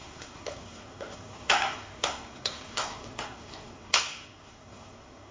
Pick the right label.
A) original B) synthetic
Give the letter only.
B